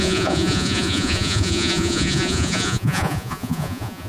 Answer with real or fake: fake